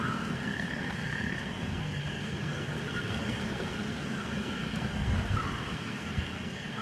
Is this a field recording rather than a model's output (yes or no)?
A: no